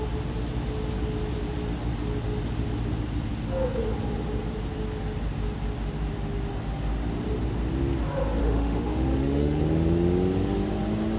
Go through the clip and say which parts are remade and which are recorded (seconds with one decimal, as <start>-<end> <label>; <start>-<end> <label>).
0.0-8.4 recorded; 8.4-9.6 remade; 9.6-11.2 recorded